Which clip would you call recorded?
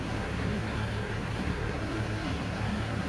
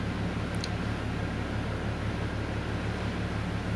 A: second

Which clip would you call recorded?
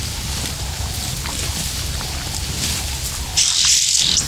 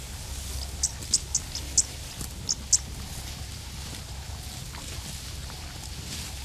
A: second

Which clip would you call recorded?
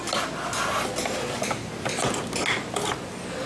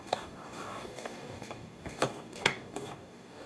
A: first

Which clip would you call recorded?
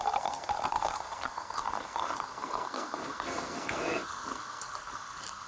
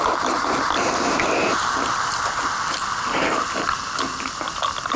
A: second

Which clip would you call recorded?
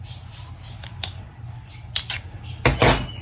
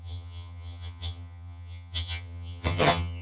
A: first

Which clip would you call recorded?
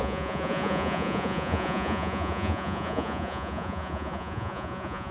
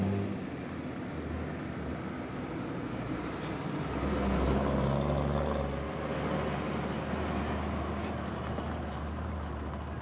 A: second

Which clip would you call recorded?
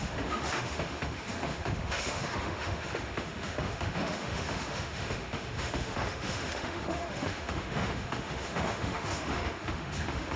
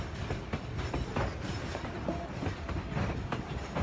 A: second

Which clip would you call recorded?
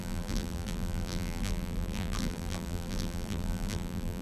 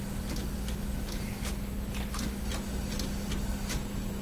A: second